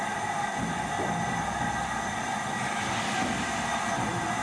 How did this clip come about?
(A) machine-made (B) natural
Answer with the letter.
B